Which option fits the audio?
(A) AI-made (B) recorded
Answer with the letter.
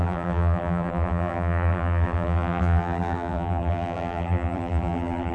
A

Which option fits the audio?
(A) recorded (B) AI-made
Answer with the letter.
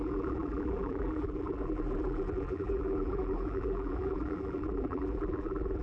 B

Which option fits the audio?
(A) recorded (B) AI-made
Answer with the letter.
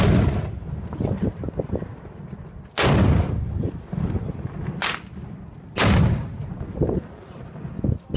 A